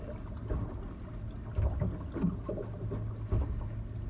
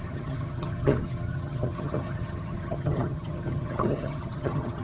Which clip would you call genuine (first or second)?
first